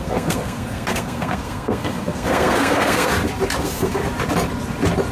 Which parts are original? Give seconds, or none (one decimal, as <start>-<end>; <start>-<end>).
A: 3.1-3.6; 4.0-5.1